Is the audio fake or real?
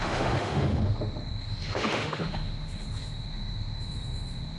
fake